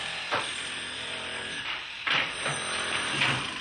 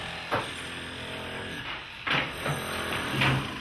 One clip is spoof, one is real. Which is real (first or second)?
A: second